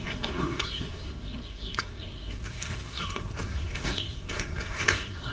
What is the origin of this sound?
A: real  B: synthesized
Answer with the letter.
B